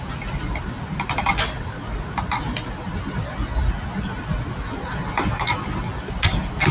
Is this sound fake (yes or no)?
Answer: no